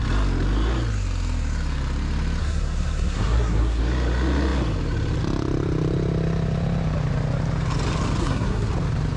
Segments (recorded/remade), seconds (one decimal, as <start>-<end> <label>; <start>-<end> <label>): 0.0-2.4 recorded; 2.4-3.8 remade; 3.8-8.2 recorded; 8.2-8.7 remade; 8.7-9.2 recorded